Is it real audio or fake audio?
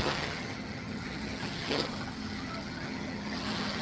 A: fake